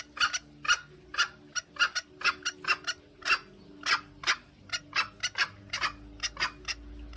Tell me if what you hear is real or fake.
real